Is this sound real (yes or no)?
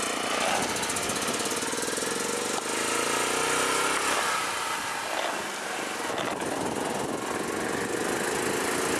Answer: yes